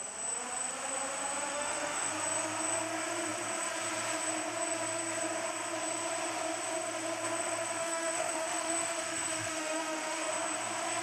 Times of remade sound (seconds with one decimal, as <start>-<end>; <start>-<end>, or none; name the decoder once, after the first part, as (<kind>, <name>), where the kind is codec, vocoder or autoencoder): 1.5-2.1 (autoencoder, DAC-VAE); 7.8-10.3